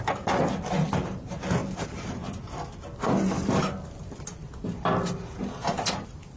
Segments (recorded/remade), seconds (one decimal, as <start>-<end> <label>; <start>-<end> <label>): 0.0-6.4 recorded